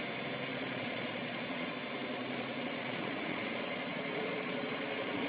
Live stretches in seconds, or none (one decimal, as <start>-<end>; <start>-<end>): 0.0-0.5; 1.7-2.1